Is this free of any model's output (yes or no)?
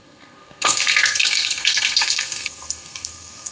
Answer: no